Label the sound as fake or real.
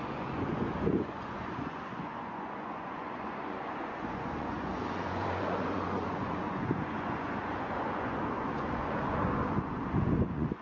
fake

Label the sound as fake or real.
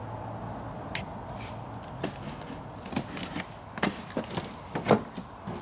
real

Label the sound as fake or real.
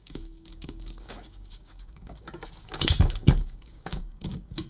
fake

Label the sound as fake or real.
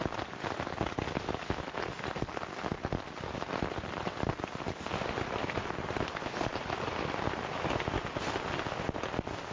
real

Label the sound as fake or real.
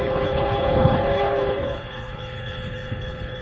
fake